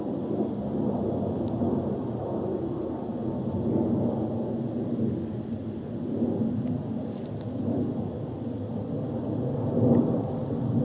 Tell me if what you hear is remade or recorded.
recorded